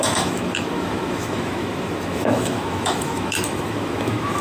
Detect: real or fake fake